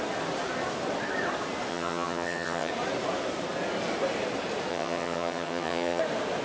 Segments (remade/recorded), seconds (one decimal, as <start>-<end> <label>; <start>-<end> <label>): 0.0-1.7 recorded; 1.7-2.7 remade; 2.7-4.7 recorded; 4.7-6.0 remade; 6.0-6.4 recorded